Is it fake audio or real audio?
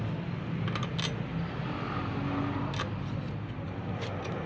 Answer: real